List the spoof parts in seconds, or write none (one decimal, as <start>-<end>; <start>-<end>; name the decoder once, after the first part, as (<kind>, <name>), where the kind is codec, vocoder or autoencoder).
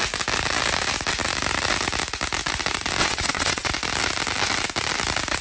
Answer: 3.0-3.7 (vocoder, WaveNeXt)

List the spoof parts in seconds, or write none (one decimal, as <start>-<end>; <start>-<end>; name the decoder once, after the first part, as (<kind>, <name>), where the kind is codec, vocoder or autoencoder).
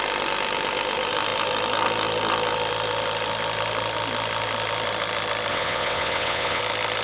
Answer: 5.5-6.6 (vocoder, WaveNeXt)